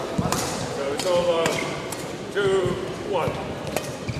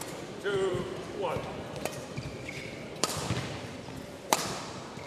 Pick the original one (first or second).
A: first